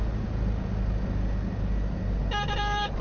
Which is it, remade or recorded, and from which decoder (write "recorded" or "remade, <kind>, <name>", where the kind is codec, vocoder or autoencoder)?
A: recorded